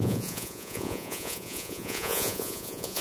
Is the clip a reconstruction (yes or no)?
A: yes